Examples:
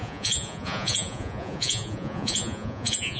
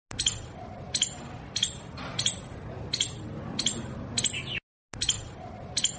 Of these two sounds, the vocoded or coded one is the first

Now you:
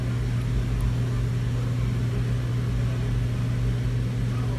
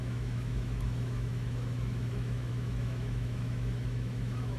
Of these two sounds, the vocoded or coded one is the second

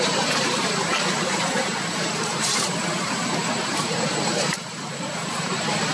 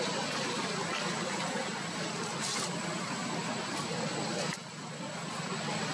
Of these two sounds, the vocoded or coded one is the first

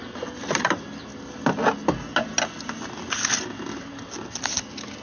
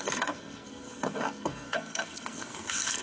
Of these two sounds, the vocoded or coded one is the second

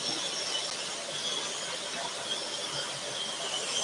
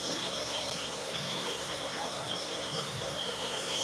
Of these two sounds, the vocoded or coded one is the second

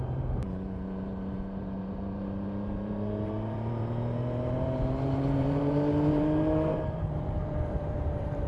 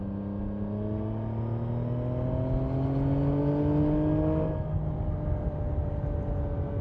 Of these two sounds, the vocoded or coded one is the first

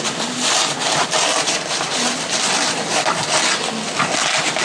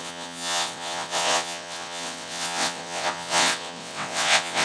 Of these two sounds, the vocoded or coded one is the second